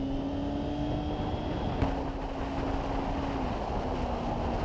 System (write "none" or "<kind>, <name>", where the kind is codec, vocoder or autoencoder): none